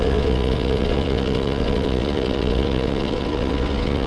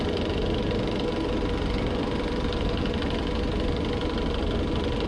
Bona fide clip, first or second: second